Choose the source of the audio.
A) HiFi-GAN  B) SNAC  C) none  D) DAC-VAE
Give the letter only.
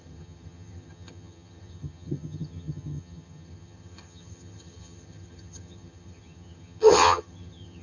A